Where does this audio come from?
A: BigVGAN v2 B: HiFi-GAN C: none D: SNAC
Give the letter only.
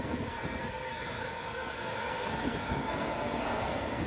D